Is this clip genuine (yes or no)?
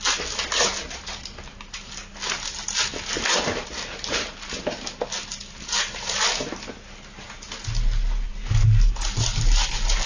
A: yes